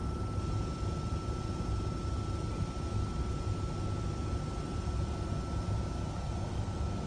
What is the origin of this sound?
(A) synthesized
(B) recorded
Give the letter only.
B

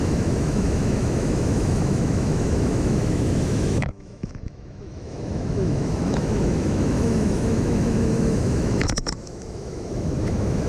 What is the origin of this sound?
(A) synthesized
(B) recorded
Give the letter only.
A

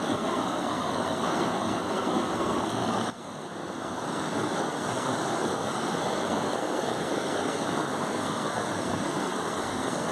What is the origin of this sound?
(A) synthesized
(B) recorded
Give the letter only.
A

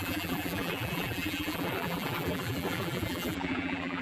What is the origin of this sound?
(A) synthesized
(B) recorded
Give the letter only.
A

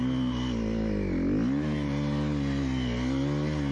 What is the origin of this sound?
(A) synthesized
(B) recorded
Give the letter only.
B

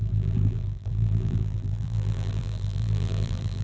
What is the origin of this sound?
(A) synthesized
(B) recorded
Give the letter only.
A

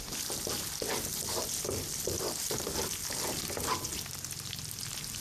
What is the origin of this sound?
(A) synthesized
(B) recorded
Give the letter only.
B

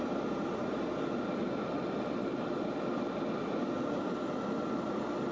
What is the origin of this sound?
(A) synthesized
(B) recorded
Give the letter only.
B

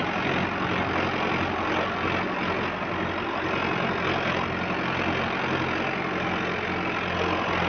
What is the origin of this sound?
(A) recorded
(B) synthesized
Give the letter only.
A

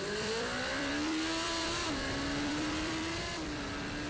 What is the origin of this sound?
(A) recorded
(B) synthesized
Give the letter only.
B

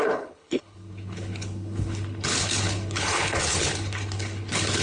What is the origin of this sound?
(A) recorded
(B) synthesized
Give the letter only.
B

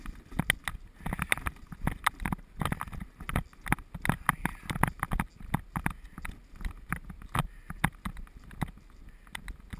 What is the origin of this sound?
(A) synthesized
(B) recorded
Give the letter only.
B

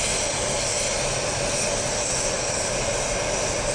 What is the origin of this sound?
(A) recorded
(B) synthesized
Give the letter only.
A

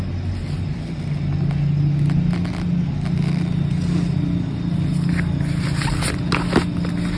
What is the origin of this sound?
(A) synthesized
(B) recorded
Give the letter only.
B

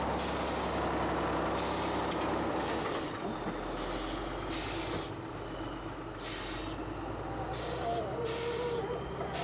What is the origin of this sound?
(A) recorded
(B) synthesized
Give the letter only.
A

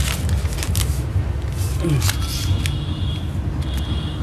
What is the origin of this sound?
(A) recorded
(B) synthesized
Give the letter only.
A